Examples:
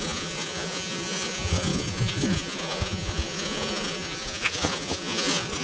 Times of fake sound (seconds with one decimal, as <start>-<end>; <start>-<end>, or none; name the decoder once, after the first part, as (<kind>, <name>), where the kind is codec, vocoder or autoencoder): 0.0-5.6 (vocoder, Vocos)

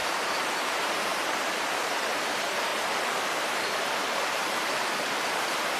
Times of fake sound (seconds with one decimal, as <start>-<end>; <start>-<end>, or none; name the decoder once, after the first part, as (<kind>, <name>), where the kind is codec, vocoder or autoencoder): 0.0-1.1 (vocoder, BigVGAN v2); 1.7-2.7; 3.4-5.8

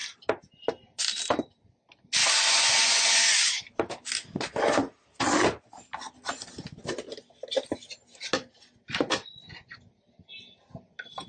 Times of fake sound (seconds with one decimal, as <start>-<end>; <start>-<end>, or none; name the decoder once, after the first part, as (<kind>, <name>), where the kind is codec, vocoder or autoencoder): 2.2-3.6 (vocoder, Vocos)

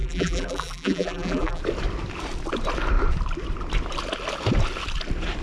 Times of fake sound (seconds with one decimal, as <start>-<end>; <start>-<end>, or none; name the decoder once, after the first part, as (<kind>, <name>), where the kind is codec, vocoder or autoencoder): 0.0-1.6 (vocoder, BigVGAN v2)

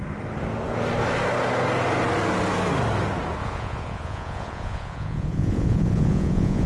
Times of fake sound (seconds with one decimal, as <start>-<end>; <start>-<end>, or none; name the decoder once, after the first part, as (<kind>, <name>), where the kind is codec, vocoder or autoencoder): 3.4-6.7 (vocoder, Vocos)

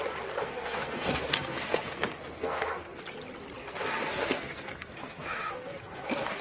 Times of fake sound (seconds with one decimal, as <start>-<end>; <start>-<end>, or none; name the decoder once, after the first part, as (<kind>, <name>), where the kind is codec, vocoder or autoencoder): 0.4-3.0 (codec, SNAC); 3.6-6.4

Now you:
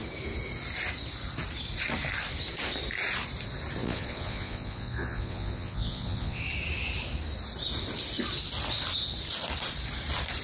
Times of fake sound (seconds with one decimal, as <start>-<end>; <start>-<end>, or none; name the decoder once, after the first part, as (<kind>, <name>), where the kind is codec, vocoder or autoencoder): 3.8-6.4 (vocoder, Vocos)

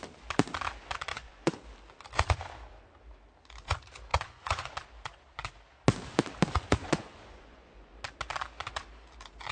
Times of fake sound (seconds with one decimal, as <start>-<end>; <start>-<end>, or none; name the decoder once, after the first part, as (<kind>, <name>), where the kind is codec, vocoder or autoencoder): 1.1-1.6 (vocoder, Vocos); 4.1-4.7; 6.8-7.9